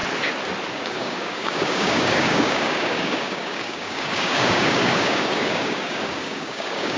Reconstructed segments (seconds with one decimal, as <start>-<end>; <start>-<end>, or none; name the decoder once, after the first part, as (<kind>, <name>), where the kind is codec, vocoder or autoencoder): 0.7-7.0 (codec, DAC)